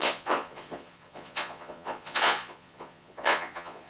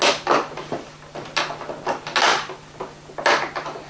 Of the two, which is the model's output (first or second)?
first